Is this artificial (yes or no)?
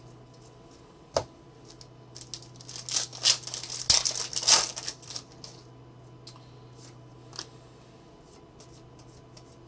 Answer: no